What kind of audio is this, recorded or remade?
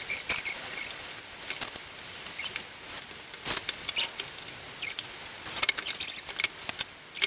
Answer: recorded